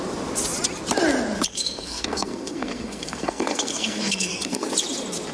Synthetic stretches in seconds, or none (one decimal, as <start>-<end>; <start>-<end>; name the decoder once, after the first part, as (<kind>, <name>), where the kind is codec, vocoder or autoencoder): 1.5-4.7 (codec, SNAC)